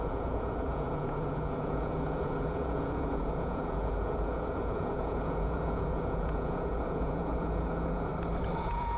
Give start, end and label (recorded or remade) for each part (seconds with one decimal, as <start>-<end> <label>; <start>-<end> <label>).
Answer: 0.0-8.1 remade; 8.1-8.6 recorded; 8.6-9.0 remade